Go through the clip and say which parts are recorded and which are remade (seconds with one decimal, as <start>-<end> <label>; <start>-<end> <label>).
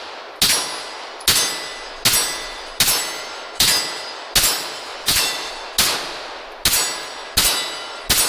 0.0-4.9 recorded; 4.9-5.5 remade; 5.5-8.3 recorded